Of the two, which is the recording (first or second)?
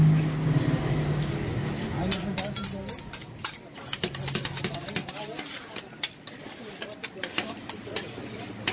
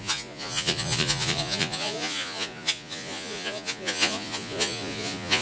first